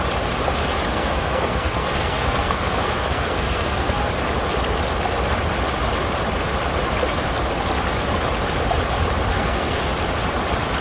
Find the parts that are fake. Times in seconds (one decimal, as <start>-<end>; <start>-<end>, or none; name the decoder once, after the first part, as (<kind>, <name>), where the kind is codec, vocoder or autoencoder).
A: 0.9-4.1 (codec, SNAC); 9.3-9.8